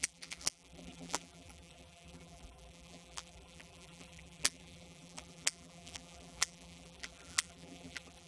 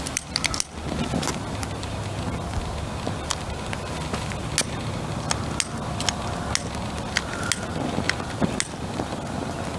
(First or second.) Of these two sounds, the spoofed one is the first